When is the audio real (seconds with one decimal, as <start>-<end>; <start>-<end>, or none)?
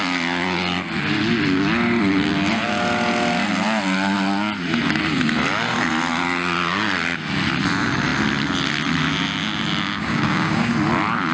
0.0-10.0; 10.7-11.3